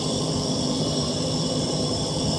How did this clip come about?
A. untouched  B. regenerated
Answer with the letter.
B